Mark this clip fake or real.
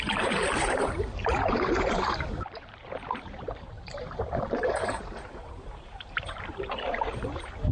fake